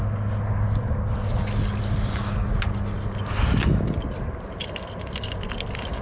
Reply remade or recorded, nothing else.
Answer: recorded